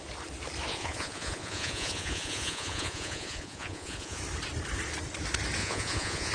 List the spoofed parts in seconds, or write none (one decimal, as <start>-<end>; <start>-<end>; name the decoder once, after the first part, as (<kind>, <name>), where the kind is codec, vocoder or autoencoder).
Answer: 0.7-4.2 (vocoder, Vocos); 5.6-6.3